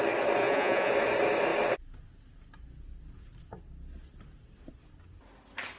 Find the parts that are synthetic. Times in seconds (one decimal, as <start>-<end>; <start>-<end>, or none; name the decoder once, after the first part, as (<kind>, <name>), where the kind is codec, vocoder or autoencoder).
0.4-0.9 (vocoder, Vocos)